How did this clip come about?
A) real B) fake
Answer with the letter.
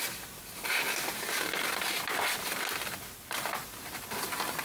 A